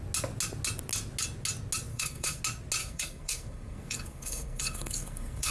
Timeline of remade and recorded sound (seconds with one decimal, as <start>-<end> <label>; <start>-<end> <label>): 0.0-1.9 recorded; 1.9-2.4 remade; 2.4-2.8 recorded; 2.8-5.5 remade